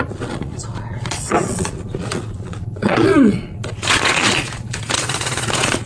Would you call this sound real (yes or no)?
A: no